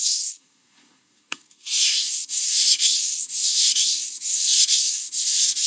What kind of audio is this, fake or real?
fake